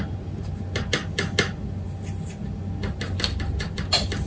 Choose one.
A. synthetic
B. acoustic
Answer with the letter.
B